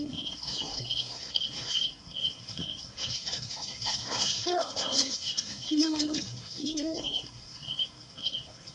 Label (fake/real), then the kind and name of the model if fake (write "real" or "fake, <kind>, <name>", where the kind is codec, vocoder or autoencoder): fake, codec, SNAC